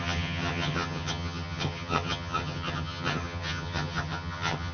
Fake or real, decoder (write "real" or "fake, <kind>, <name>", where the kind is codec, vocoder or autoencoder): fake, vocoder, HiFi-GAN